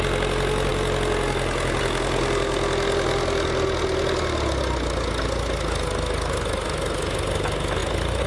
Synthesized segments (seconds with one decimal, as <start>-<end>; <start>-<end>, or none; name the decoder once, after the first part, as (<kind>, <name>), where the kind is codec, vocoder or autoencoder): none